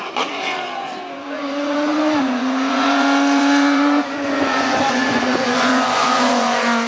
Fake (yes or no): yes